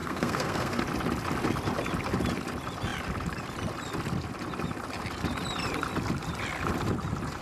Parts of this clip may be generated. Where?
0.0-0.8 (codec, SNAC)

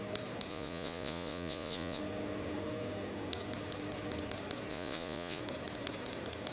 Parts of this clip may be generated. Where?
0.5-2.0 (vocoder, Vocos); 4.7-5.4

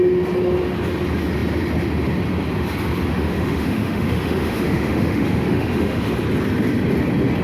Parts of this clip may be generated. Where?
3.1-6.1 (autoencoder, DAC-VAE)

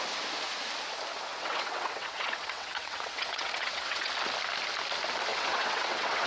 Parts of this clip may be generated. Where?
1.3-4.1 (vocoder, WaveNeXt); 5.3-6.3